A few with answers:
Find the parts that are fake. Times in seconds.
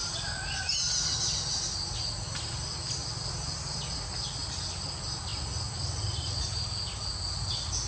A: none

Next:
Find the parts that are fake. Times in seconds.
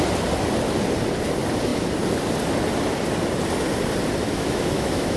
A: 4.2-5.2 (autoencoder, DAC-VAE)